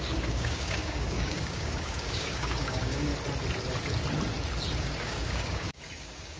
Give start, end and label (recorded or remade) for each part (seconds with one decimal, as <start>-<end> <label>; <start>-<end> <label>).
0.0-3.1 remade; 3.1-4.8 recorded; 4.8-6.4 remade